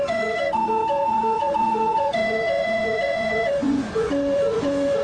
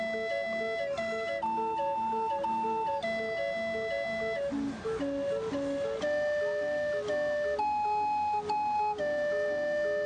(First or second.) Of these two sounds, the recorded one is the second